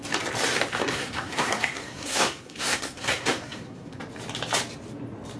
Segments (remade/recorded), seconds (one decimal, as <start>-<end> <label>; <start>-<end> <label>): 0.0-0.8 recorded; 0.8-4.0 remade; 4.0-5.4 recorded